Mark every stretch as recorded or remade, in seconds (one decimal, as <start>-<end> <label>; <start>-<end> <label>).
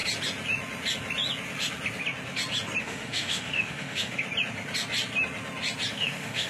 0.0-2.8 recorded; 2.8-4.2 remade; 4.2-5.9 recorded; 5.9-6.5 remade